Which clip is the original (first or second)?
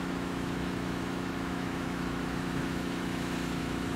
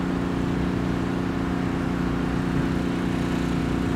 second